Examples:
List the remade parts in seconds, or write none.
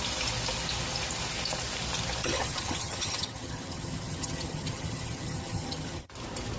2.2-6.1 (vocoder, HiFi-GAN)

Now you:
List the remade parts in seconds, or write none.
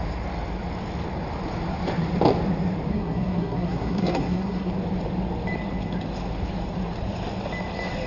2.9-4.7 (codec, SNAC)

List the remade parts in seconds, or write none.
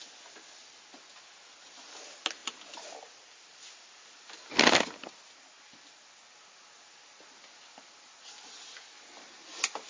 none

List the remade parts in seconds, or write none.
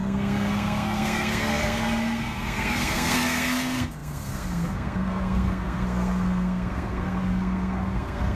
0.0-8.4 (codec, SNAC)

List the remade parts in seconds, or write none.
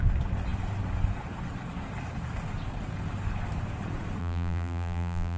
4.2-5.4 (vocoder, BigVGAN v2)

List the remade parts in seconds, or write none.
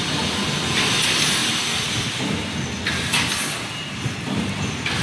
none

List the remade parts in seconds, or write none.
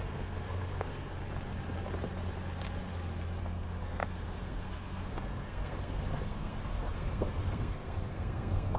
0.0-1.2 (codec, SNAC); 3.4-8.8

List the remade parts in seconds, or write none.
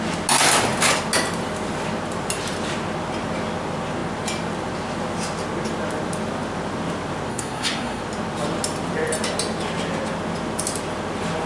7.3-8.0 (codec, SNAC)